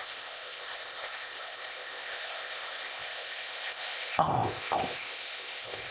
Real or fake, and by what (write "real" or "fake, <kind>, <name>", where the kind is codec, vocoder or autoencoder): fake, codec, ZipCodec